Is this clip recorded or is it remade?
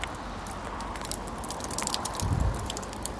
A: recorded